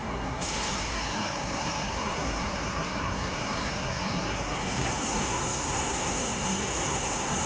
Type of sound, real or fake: fake